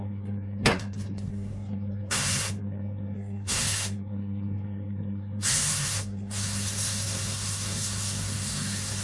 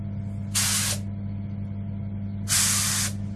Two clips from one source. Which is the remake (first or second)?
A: first